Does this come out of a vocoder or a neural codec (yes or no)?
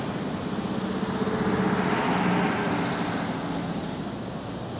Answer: no